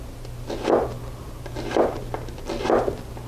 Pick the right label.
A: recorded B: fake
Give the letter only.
A